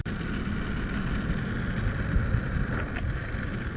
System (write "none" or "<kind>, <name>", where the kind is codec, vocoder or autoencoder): none